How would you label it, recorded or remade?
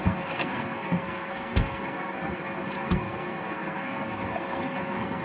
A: remade